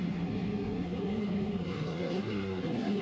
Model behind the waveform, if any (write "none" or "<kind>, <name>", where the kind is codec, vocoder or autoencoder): codec, SNAC